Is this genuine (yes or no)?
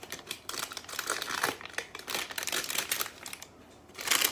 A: yes